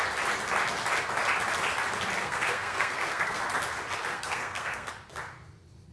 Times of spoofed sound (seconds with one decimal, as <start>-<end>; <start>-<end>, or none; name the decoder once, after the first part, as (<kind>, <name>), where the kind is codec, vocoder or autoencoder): 2.2-3.4 (codec, SNAC); 4.1-4.9